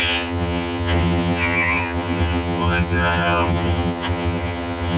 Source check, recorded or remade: remade